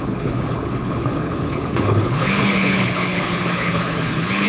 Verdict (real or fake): fake